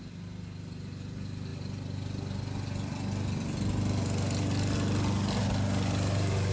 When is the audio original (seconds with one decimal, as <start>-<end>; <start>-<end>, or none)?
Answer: 0.0-6.5

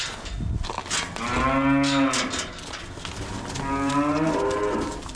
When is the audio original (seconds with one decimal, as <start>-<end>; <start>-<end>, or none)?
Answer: 0.0-5.2

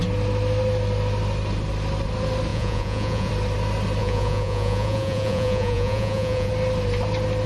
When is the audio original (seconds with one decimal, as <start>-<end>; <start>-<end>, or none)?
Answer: 0.0-2.5; 3.3-4.0; 6.5-7.5